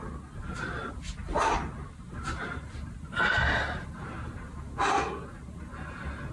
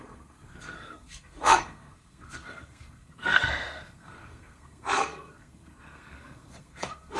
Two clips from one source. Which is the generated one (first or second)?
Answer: second